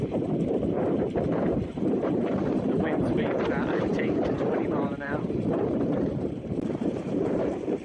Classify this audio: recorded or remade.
remade